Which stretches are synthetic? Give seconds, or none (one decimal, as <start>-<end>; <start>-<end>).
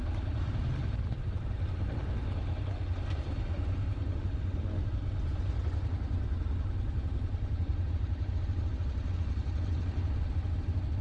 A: 0.6-2.0; 2.9-3.5; 7.7-8.3